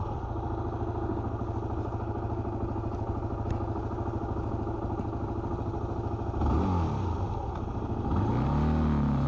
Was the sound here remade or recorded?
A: recorded